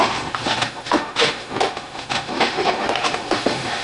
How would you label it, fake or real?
fake